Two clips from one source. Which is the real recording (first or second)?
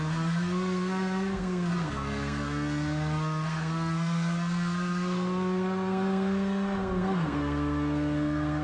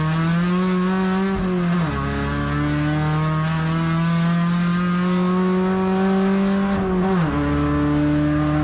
second